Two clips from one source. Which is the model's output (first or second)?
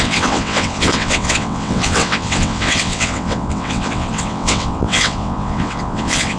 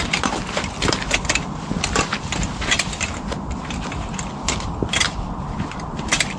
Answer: first